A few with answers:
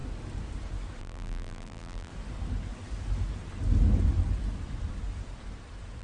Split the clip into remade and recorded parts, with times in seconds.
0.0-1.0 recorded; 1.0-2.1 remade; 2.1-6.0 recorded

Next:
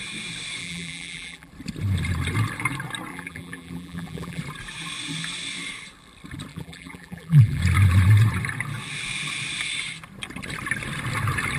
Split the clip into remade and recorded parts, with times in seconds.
0.0-0.6 recorded; 0.6-1.5 remade; 1.5-3.1 recorded; 3.1-4.4 remade; 4.4-6.5 recorded; 6.5-7.6 remade; 7.6-11.6 recorded

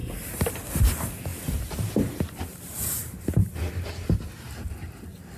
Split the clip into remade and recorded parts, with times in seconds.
0.0-0.5 remade; 0.5-1.3 recorded; 1.3-1.9 remade; 1.9-2.5 recorded; 2.5-3.1 remade; 3.1-5.4 recorded

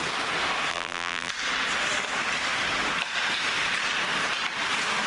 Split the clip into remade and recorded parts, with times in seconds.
0.0-0.7 recorded; 0.7-1.3 remade; 1.3-5.1 recorded

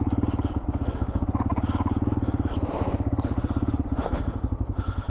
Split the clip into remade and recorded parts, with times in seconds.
0.0-2.7 recorded; 2.7-5.1 remade